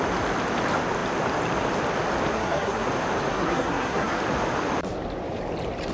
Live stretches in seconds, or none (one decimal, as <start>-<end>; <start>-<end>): 0.0-2.3; 2.9-3.3; 4.2-5.9